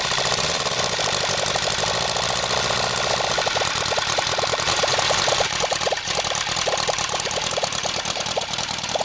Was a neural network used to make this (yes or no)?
yes